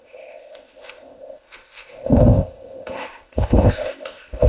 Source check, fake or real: fake